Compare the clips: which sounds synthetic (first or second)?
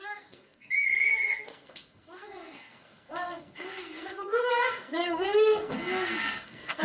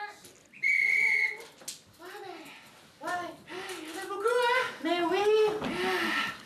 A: first